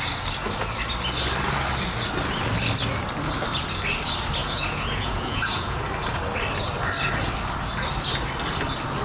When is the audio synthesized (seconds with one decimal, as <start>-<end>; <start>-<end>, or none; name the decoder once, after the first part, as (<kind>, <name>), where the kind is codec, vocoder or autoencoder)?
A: 4.4-5.8 (vocoder, Vocos)